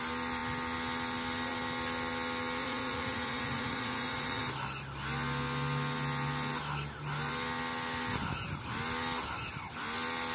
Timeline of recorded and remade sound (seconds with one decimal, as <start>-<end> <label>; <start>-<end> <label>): 0.0-2.6 recorded; 2.6-4.4 remade; 4.4-10.3 recorded